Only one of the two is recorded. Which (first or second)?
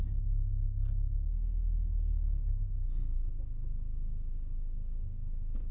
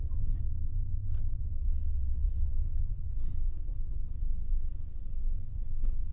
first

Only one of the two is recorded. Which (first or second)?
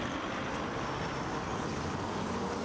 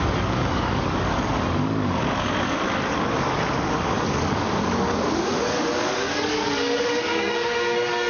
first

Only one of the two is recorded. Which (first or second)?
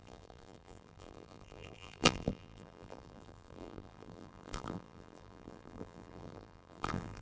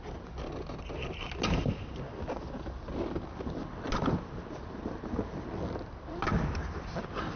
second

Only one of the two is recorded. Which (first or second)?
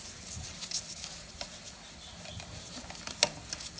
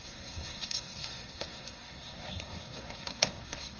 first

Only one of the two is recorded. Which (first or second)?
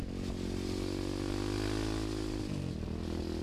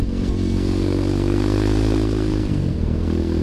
first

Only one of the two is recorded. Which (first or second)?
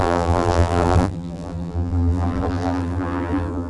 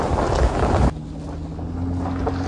second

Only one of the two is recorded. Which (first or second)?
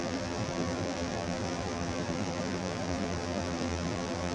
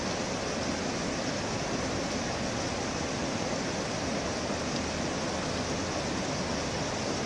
second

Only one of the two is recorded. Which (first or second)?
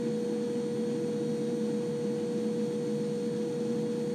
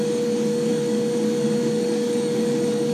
first